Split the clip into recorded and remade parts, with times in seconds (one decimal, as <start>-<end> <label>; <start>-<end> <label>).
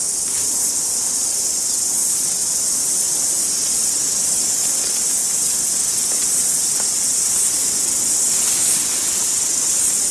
0.0-2.4 recorded; 2.4-3.5 remade; 3.5-6.6 recorded; 6.6-8.0 remade; 8.0-10.1 recorded